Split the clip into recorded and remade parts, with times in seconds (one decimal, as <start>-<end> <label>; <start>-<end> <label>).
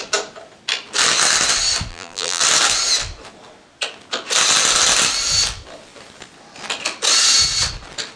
0.0-1.9 recorded; 1.9-2.4 remade; 2.4-8.2 recorded